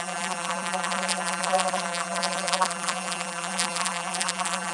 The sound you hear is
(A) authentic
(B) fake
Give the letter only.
B